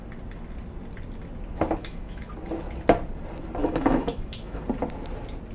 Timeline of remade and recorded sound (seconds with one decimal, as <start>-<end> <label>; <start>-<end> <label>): 0.0-1.8 recorded; 1.8-2.3 remade; 2.3-3.6 recorded; 3.6-4.6 remade; 4.6-5.5 recorded